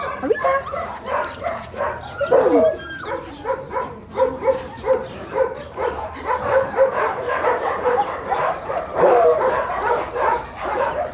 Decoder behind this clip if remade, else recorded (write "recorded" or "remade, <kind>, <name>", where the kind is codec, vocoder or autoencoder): remade, vocoder, BigVGAN v2